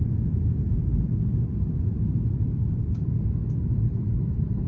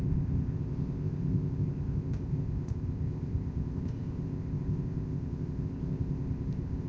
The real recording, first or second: first